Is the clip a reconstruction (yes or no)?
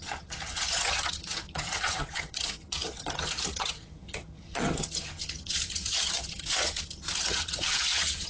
yes